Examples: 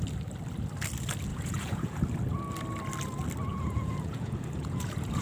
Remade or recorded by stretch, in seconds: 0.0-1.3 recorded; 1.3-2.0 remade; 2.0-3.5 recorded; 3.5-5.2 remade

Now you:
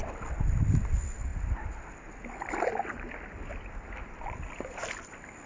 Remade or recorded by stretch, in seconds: 0.0-5.5 recorded